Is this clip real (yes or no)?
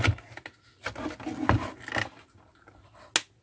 yes